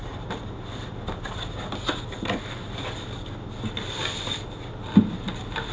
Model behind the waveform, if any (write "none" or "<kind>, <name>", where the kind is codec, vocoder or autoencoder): none